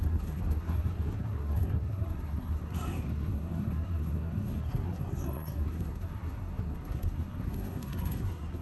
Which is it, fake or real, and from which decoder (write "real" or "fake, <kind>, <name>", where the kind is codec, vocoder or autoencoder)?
fake, codec, SNAC